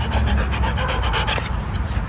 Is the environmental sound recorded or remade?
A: remade